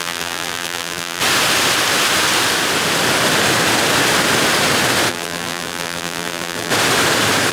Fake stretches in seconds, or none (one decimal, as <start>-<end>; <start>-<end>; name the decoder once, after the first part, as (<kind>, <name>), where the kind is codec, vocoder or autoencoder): 0.0-1.2 (vocoder, BigVGAN v2); 5.1-6.7